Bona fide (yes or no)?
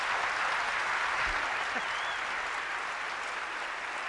yes